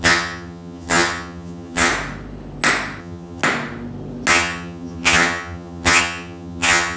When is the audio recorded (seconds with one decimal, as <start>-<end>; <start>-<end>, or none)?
1.9-3.0; 3.4-4.3